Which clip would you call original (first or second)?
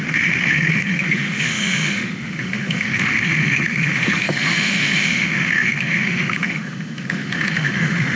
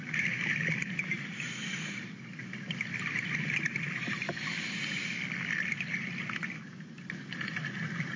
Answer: second